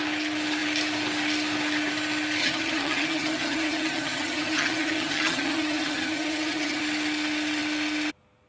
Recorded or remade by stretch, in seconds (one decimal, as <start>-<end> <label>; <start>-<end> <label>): 0.0-2.4 recorded; 2.4-6.8 remade; 6.8-8.5 recorded